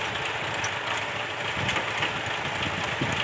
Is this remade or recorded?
recorded